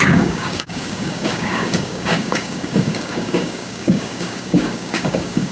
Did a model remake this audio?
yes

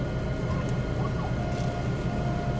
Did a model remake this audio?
no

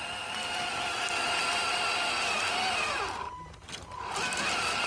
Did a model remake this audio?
yes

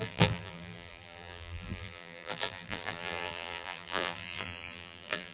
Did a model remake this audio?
yes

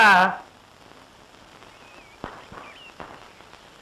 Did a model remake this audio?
no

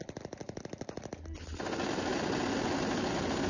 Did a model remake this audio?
no